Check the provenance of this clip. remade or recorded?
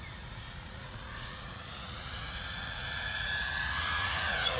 remade